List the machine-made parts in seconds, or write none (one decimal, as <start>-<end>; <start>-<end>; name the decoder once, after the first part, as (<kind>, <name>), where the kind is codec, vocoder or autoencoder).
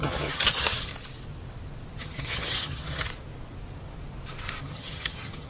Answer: 0.0-0.9 (vocoder, HiFi-GAN); 2.0-3.1; 4.6-5.5